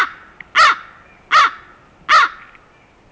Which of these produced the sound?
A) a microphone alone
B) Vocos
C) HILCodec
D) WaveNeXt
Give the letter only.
A